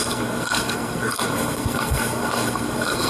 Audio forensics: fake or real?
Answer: fake